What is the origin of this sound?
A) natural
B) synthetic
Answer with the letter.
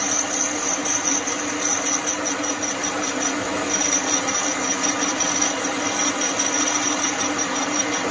A